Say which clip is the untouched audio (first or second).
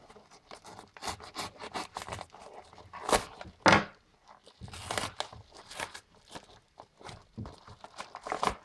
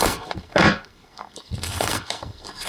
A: first